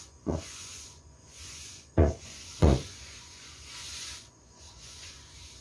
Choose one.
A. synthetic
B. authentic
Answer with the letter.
A